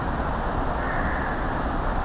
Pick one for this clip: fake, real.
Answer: real